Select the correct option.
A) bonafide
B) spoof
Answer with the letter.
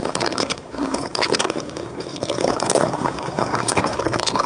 B